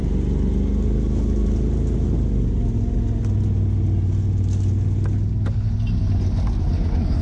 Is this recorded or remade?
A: recorded